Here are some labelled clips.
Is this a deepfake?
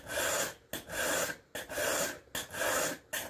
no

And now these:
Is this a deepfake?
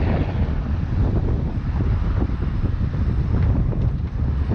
no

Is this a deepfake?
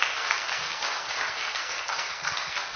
yes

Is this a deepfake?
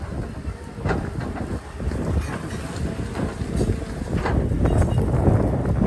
no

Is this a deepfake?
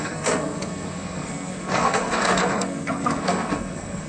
yes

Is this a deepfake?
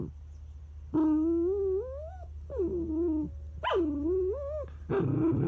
no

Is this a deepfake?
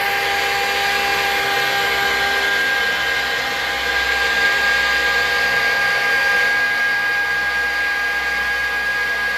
no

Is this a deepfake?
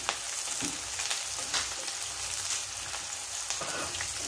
no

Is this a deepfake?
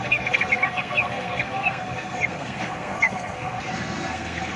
yes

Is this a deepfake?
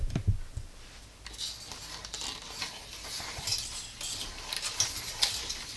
no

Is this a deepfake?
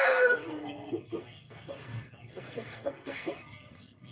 yes